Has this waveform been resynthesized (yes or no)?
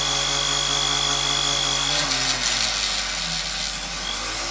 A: no